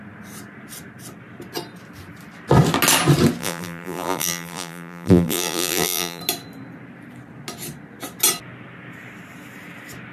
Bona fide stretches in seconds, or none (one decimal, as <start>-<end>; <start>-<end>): 0.0-3.4; 6.2-10.1